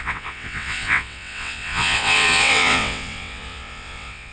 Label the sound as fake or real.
fake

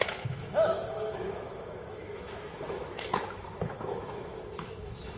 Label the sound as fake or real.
fake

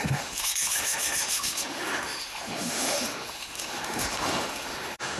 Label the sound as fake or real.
fake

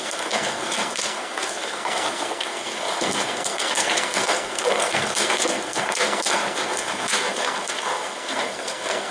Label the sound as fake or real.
fake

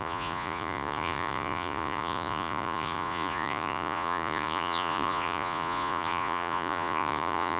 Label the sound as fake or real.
fake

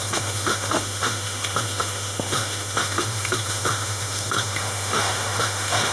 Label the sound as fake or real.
fake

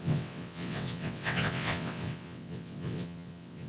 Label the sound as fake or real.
fake